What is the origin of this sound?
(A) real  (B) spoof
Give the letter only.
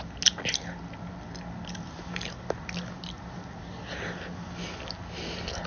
A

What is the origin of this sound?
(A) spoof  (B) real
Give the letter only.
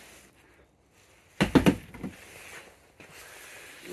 B